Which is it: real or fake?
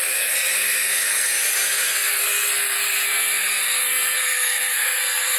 fake